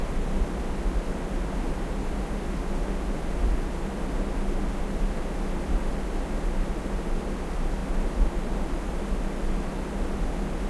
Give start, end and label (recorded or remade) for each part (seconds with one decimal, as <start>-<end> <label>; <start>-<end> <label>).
0.0-0.5 remade; 0.5-7.8 recorded; 7.8-9.6 remade; 9.6-10.7 recorded